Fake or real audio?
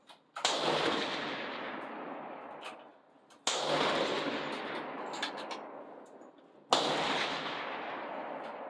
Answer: real